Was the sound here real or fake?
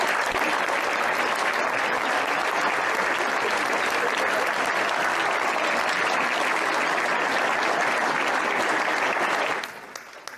real